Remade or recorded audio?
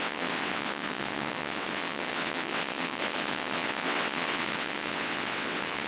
remade